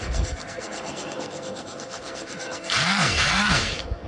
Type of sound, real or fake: fake